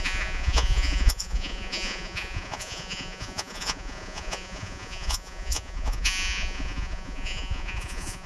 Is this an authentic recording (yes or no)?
no